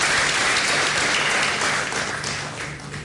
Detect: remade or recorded recorded